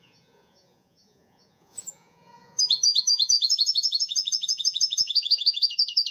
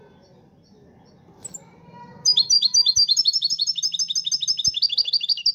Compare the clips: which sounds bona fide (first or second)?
second